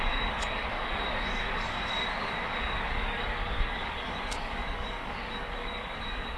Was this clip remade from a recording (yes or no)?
yes